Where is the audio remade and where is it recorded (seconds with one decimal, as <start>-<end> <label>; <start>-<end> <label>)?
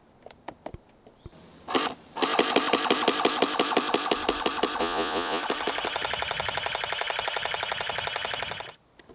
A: 0.0-4.8 recorded; 4.8-5.4 remade; 5.4-9.1 recorded